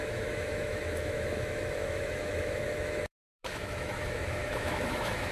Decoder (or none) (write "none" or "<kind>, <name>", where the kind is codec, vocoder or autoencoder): autoencoder, DAC-VAE